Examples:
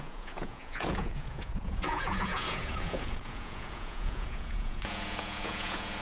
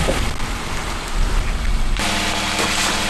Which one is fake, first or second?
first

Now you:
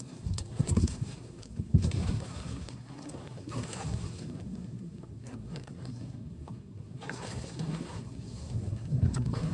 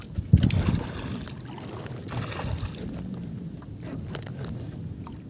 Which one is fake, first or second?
first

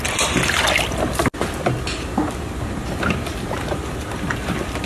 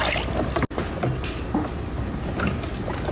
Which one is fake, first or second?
first